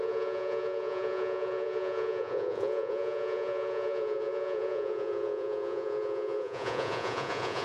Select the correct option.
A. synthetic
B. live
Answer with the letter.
A